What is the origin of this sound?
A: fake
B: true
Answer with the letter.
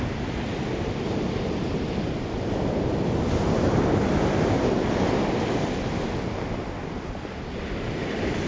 B